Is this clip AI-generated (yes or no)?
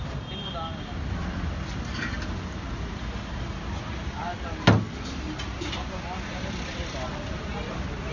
no